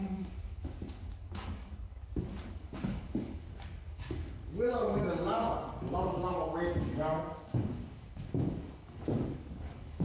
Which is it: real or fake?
fake